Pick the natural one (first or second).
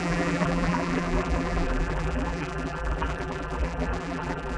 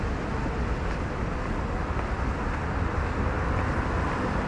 second